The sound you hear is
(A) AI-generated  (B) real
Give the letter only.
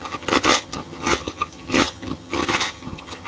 A